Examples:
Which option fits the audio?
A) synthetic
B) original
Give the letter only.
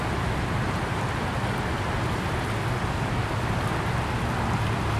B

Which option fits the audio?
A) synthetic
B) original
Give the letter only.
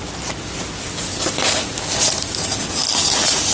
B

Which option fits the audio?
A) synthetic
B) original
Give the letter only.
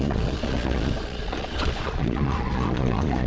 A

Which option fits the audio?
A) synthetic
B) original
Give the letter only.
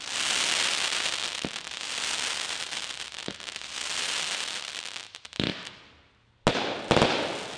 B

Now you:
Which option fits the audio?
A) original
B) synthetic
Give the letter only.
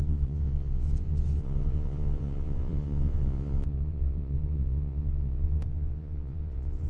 B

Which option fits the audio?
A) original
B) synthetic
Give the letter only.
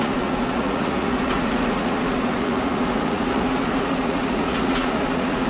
B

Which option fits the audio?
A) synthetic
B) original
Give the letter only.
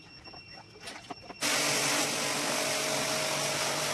B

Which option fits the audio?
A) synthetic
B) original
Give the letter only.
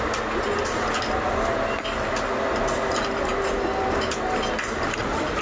B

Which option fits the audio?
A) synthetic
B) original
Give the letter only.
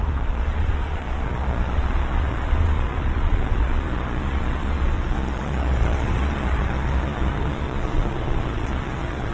A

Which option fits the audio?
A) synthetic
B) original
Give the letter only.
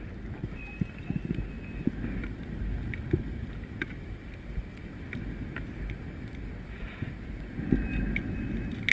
B